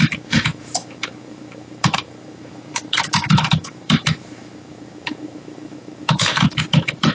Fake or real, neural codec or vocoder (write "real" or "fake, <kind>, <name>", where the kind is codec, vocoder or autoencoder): fake, autoencoder, DAC-VAE